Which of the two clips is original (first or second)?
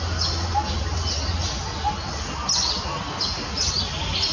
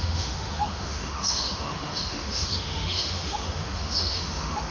first